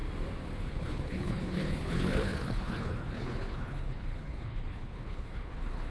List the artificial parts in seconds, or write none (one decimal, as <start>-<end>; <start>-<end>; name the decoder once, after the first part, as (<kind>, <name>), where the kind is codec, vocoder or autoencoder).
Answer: 0.6-5.9 (codec, HILCodec)